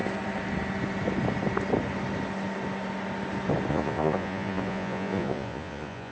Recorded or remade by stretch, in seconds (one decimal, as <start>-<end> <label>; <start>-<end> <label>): 0.0-3.7 recorded; 3.7-6.1 remade